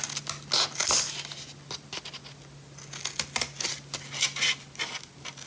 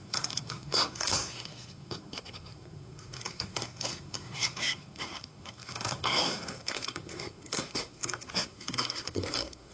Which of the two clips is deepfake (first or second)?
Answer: second